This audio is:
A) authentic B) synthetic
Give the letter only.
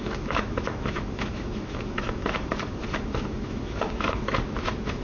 B